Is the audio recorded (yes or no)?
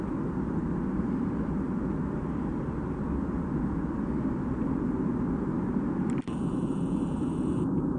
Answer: yes